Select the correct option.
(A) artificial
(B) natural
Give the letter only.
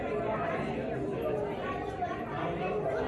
B